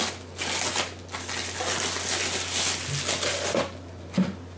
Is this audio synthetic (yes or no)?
no